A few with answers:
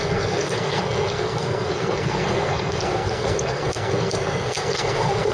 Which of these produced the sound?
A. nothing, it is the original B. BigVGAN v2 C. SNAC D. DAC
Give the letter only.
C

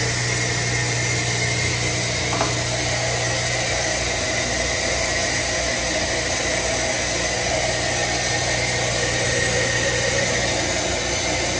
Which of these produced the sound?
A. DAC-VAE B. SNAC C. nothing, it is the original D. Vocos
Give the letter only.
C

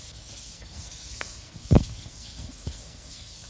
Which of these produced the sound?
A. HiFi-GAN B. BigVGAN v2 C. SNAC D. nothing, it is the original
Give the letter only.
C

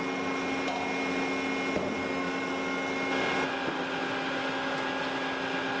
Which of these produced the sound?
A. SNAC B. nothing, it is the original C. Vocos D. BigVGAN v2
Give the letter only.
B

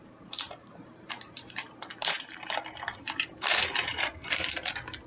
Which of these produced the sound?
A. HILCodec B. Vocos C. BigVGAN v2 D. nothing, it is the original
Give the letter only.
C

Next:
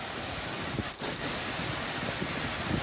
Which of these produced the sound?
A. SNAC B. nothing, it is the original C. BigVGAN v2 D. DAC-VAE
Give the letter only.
B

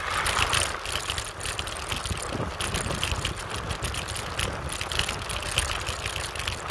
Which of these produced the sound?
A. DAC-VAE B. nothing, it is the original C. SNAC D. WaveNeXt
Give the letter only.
B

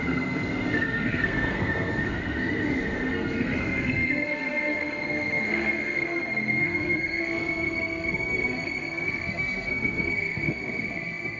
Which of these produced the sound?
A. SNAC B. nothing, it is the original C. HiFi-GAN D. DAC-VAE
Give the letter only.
A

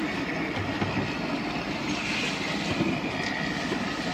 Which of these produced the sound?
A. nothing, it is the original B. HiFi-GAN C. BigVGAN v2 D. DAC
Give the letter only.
A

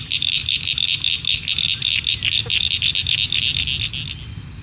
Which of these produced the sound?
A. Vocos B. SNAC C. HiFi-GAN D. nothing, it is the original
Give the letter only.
D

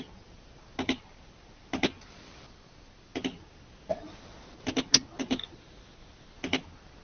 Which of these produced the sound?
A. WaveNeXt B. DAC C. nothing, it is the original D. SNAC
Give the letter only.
C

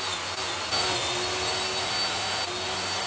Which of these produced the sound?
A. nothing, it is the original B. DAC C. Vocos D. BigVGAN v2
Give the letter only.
A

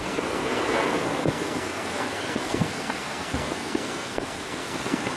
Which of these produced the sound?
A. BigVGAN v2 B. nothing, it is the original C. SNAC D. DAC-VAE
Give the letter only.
C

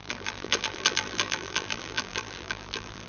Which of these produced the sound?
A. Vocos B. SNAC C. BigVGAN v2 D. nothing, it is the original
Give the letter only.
C